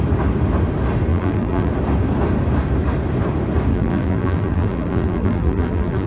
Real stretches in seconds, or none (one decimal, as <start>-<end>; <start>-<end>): 0.0-1.1; 1.7-3.7